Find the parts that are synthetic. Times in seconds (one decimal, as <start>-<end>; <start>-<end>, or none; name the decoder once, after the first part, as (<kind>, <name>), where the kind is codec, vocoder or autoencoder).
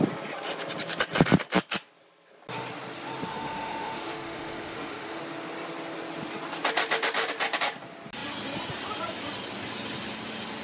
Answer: 3.3-5.2 (autoencoder, DAC-VAE)